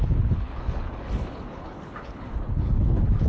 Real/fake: fake